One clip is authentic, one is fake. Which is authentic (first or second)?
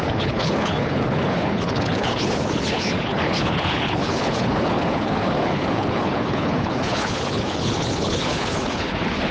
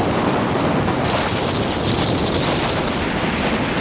second